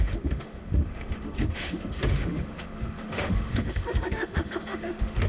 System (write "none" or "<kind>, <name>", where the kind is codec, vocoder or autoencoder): autoencoder, DAC-VAE